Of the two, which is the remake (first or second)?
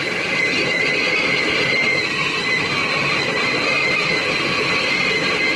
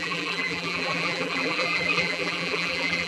second